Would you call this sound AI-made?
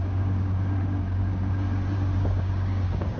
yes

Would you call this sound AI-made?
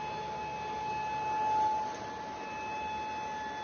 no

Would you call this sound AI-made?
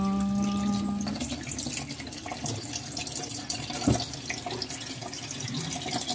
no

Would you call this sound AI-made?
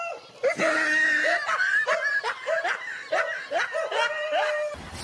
no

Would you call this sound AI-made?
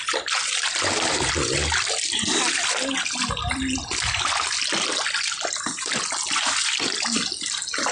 no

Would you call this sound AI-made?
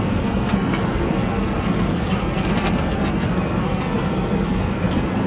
yes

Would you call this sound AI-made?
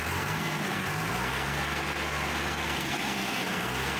yes